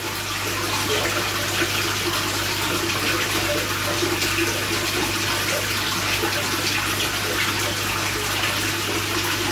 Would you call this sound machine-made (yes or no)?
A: no